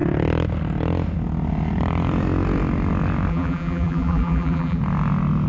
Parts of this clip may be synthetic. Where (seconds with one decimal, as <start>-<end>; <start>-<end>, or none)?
3.3-4.8